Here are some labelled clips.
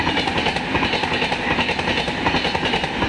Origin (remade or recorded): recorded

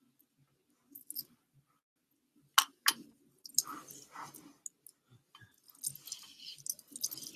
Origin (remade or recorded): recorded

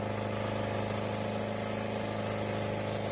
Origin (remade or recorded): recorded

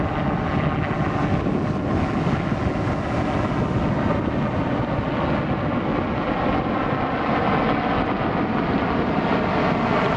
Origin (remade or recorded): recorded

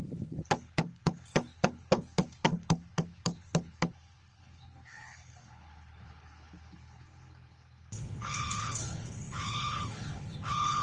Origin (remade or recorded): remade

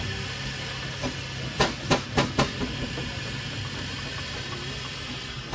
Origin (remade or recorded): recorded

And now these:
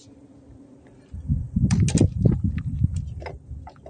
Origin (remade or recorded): recorded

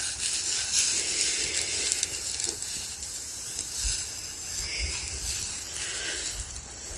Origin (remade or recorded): recorded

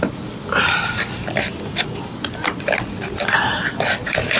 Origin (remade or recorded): recorded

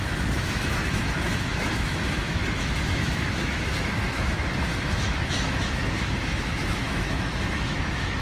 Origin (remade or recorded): remade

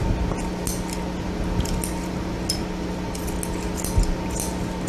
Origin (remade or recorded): recorded